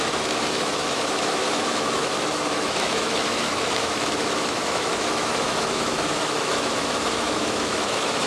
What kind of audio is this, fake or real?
fake